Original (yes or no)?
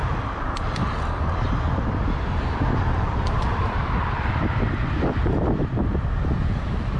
no